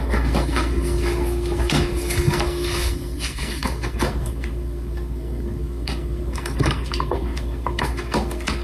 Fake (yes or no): yes